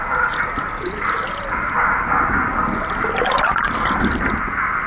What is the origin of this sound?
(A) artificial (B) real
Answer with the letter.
B